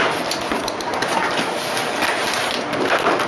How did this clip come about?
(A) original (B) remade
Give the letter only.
A